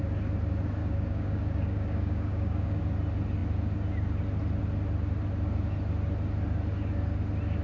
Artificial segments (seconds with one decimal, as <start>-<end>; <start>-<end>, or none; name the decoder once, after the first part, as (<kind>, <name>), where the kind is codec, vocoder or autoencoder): 0.8-2.8 (codec, DAC)